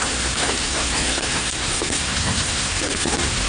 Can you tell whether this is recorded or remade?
remade